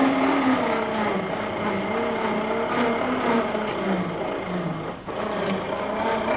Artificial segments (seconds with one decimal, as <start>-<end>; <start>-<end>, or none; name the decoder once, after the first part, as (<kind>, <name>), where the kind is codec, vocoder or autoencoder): none